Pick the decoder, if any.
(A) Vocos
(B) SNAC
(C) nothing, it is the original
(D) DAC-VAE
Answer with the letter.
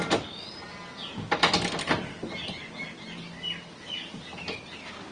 C